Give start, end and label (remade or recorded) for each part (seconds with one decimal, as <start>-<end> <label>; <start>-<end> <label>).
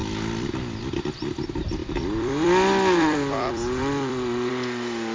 0.0-0.8 recorded; 0.8-5.1 remade